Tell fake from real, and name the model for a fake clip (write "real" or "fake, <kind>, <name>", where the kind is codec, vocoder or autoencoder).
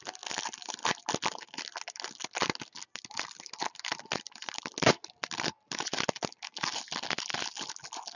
real